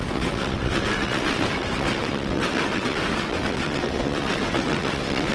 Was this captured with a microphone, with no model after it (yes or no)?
no